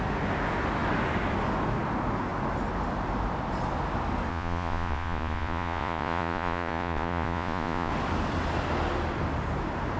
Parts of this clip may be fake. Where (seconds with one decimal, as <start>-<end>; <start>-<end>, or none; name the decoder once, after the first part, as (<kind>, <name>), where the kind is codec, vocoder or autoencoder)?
4.3-7.9 (vocoder, Vocos)